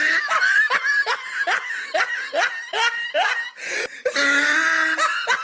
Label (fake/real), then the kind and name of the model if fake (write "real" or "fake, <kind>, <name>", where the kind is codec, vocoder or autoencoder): real